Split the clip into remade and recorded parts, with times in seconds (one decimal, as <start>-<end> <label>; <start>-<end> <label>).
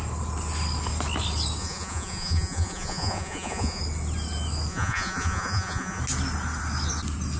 0.0-1.6 recorded; 1.6-3.8 remade; 3.8-4.7 recorded; 4.7-6.0 remade; 6.0-7.4 recorded